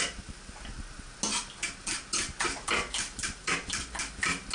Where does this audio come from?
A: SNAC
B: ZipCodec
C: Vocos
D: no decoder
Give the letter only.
D